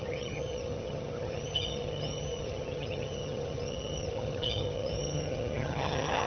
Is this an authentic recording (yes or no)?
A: no